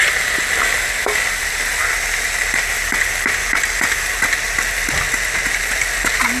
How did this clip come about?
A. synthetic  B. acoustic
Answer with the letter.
B